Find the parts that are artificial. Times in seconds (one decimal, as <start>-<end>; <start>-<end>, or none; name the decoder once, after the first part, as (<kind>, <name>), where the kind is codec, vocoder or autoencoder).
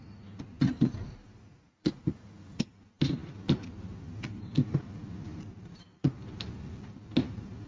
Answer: 1.2-2.6 (vocoder, Vocos)